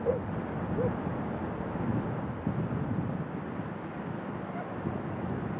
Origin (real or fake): real